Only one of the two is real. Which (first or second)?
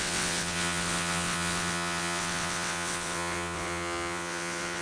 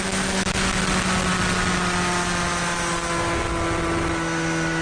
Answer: second